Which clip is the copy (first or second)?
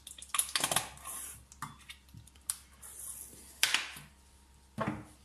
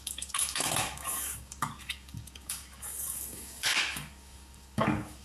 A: second